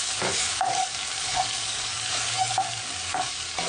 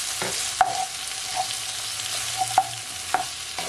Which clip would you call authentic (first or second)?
second